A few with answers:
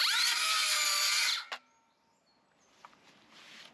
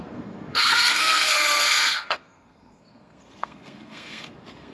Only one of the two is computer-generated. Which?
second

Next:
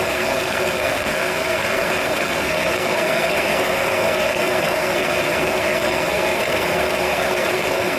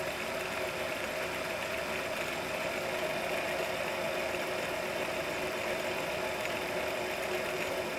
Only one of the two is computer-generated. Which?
first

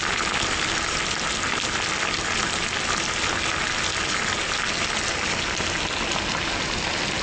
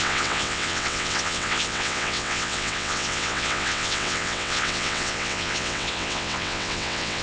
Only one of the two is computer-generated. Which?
second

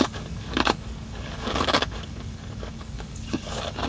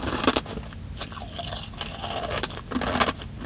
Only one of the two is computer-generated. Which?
first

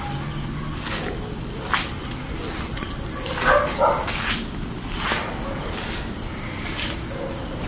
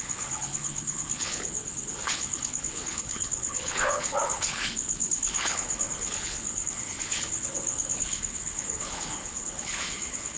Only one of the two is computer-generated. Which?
second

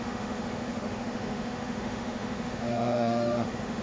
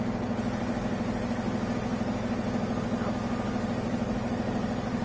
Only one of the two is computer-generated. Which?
first